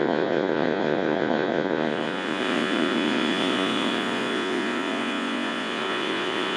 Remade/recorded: remade